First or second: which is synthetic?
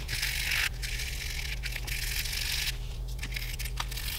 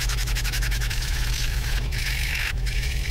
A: second